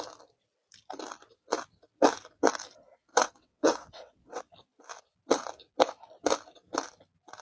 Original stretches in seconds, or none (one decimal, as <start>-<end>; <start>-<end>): 0.0-3.1; 4.4-7.4